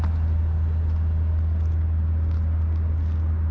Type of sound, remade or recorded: recorded